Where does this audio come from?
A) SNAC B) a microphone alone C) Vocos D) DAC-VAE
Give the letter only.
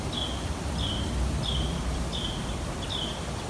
B